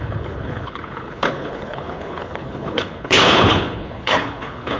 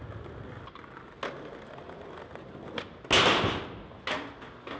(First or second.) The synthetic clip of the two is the first